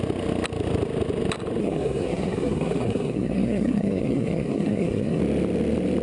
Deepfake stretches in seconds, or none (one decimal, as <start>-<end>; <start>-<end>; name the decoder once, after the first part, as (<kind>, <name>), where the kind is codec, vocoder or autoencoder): 1.6-5.2 (codec, SNAC)